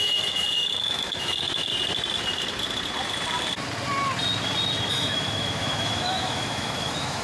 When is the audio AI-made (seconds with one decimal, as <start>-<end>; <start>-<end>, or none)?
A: 0.0-1.7; 4.9-7.2